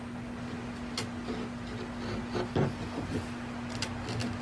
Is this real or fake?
real